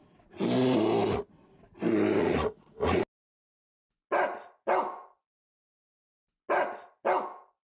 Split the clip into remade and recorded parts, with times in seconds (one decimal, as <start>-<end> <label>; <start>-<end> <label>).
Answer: 0.0-2.2 recorded; 2.2-3.0 remade; 3.0-7.7 recorded